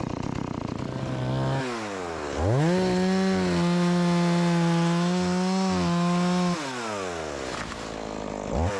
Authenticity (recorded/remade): recorded